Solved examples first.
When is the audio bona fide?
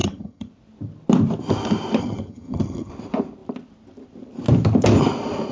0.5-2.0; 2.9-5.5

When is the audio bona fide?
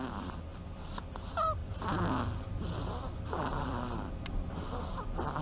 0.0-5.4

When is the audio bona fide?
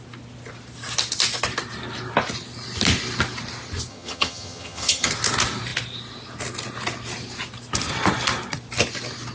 0.0-3.9; 5.1-9.3